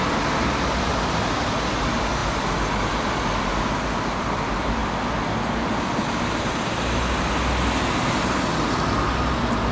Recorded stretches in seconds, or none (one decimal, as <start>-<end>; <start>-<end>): 0.0-9.7